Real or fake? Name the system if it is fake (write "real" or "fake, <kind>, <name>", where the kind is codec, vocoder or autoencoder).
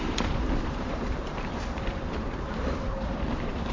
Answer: fake, vocoder, BigVGAN v2